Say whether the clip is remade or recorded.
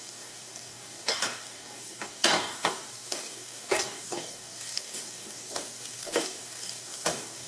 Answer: remade